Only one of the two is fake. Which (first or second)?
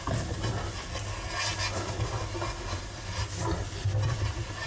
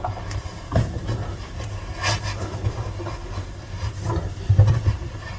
second